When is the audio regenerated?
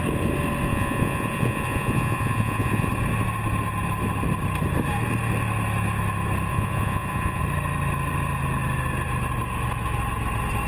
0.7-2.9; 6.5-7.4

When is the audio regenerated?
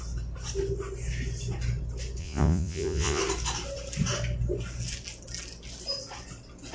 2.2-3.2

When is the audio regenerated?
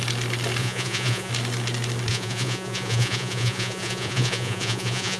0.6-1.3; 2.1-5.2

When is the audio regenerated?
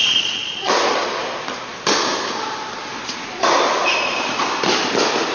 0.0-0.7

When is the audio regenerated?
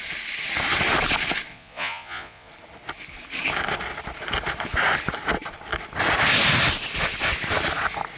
1.5-2.5